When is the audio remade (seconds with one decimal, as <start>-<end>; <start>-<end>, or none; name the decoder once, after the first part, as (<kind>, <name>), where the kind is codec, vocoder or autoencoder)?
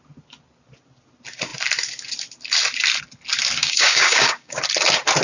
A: 3.6-4.6 (codec, DAC)